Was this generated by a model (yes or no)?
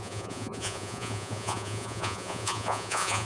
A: yes